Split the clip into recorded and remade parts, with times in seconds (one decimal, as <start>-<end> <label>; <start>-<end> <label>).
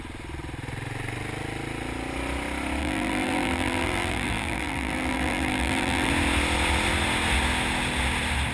0.0-2.8 recorded; 2.8-6.1 remade; 6.1-8.5 recorded